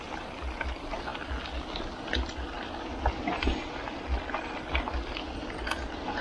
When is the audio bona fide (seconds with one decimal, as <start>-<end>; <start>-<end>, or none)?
0.0-6.2

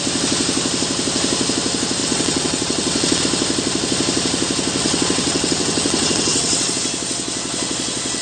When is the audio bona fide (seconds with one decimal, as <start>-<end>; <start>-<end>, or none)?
0.0-2.0; 3.2-4.8; 6.7-8.2

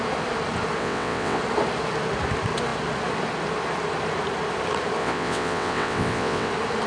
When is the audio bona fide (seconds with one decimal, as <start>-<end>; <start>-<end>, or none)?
0.0-0.8; 1.4-5.0; 6.5-6.9

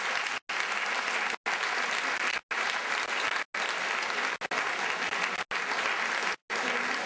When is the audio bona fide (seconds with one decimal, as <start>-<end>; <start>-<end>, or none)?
0.0-7.1

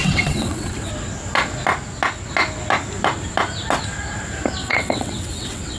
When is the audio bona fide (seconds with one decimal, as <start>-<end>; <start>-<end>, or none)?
0.9-4.6